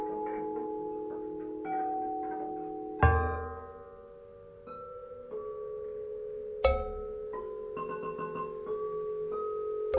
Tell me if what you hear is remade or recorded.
recorded